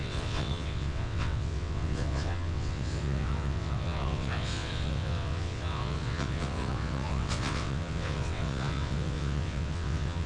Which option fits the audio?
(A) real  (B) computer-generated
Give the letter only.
B